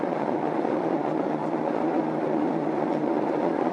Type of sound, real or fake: fake